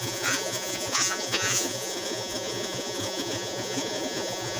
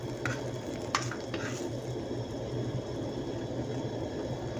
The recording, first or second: second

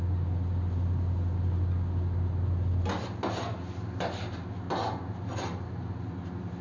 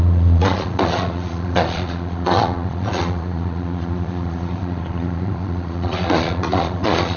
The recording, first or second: first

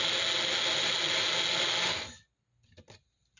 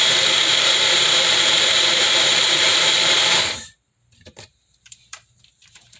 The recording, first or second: first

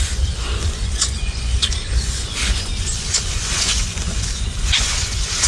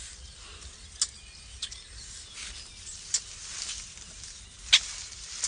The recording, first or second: second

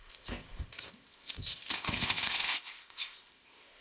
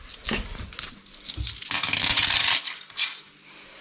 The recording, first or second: second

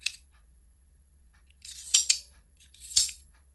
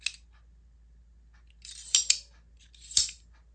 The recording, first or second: second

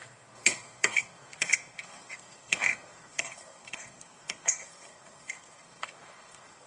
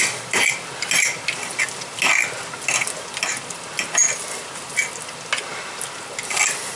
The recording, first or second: second